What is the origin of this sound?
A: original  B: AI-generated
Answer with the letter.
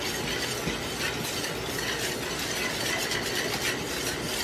A